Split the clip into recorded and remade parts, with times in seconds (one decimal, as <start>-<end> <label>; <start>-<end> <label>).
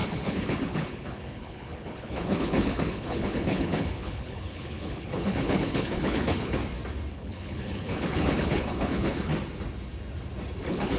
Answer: 0.0-6.6 remade; 6.6-7.1 recorded; 7.1-9.3 remade; 9.3-10.6 recorded; 10.6-11.0 remade